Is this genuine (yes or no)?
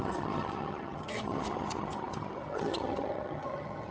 no